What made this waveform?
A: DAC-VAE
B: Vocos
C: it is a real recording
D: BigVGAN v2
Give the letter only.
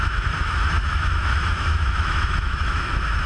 A